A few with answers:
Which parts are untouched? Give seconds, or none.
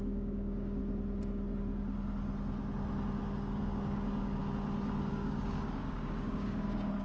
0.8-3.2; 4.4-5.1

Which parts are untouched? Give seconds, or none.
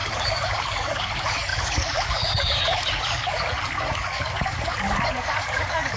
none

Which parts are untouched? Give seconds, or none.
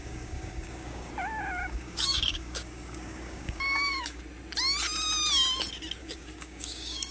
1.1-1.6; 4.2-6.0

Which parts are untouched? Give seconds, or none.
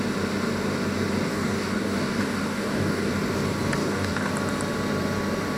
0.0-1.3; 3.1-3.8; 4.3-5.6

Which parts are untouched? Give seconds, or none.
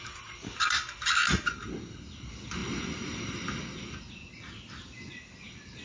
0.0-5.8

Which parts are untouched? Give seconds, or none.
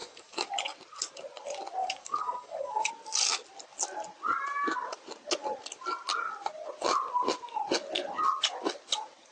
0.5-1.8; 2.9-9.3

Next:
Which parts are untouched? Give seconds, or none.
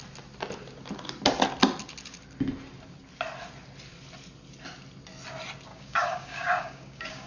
0.0-5.7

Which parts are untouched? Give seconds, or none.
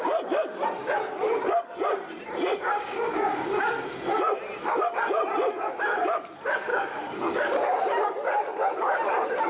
0.0-2.7; 3.7-6.7; 7.8-9.5